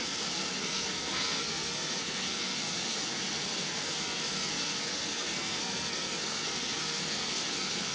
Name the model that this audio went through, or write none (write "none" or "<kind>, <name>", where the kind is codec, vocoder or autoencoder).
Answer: codec, SNAC